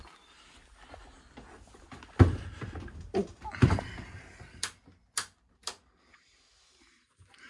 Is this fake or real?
real